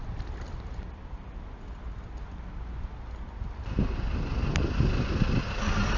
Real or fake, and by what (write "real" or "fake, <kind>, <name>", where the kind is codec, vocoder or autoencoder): real